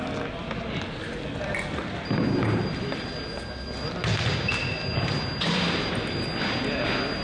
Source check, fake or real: real